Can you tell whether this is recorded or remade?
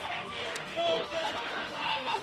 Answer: remade